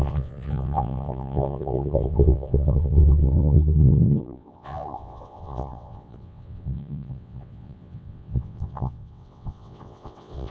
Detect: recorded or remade remade